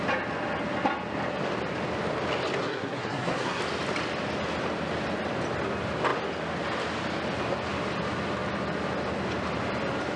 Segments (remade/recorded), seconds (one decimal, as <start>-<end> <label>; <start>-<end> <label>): 0.0-2.6 recorded; 2.6-3.6 remade; 3.6-10.2 recorded